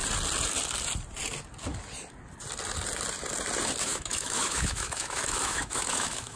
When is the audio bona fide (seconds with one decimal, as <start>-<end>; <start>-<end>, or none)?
0.0-3.8